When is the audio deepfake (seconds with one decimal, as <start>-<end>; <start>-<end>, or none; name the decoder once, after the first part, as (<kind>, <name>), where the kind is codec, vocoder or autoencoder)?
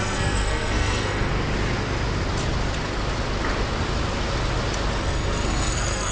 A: 0.0-1.3 (codec, SNAC); 5.0-6.1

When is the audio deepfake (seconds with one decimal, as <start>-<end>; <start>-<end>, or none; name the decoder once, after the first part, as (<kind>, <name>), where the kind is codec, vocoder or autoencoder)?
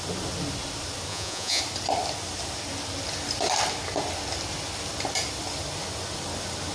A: 1.1-1.6 (vocoder, Vocos)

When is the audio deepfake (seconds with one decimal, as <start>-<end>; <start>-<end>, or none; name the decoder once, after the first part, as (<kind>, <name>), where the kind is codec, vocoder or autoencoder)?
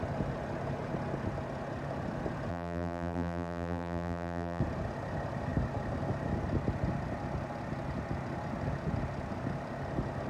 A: 2.5-4.6 (vocoder, BigVGAN v2)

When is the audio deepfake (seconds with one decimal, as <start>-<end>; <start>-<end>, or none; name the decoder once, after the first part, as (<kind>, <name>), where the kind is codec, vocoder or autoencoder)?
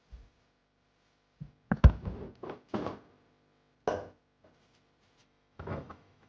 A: 5.2-6.3 (autoencoder, DAC-VAE)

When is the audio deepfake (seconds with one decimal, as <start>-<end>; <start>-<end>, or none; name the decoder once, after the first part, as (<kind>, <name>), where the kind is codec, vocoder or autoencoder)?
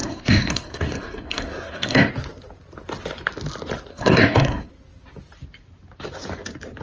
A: 0.0-2.1 (codec, SNAC); 3.9-4.7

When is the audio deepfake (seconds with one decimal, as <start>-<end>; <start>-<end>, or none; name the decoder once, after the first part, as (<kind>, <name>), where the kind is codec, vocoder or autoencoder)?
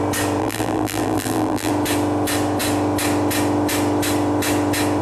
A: 0.4-1.7 (vocoder, BigVGAN v2)